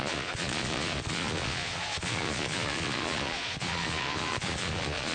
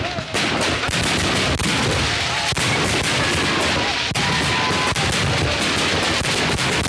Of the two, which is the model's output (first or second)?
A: first